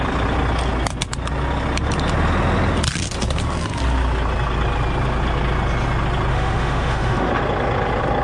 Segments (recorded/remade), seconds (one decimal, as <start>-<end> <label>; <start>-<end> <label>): 0.0-6.3 recorded; 6.3-7.3 remade; 7.3-8.2 recorded